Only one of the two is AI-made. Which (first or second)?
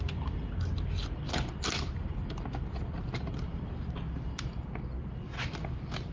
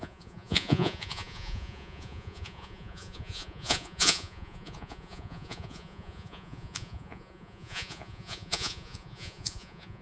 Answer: second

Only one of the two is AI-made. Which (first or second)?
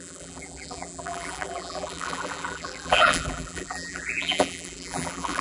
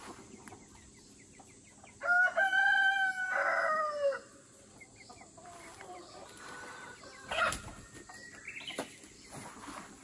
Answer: first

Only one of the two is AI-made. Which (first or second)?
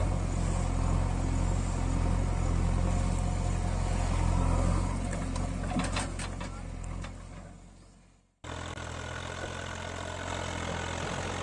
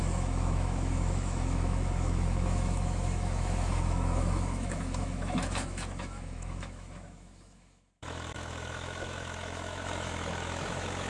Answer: second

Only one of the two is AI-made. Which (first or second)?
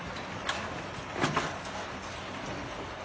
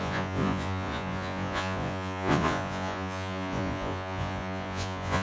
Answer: second